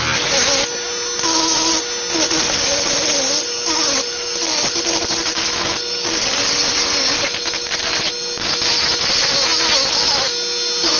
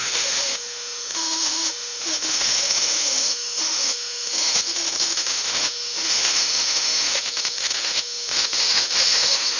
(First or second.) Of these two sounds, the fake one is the second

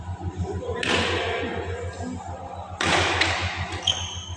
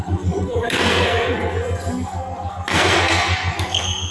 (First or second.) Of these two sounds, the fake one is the second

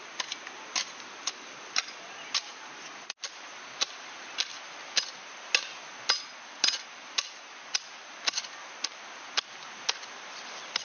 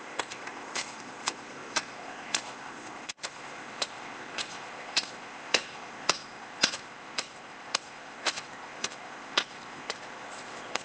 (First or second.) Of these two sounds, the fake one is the second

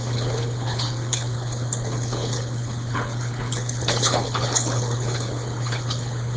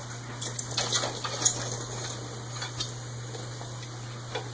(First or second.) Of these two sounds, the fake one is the first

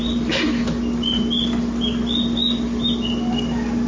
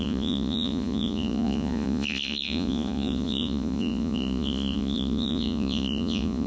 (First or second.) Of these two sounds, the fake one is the second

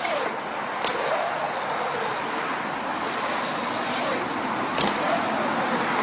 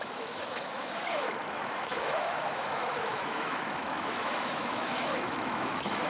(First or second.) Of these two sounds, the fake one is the second